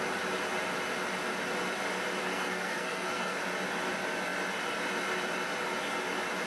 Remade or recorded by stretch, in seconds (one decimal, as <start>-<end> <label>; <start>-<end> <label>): 0.0-2.2 recorded; 2.2-3.4 remade; 3.4-6.5 recorded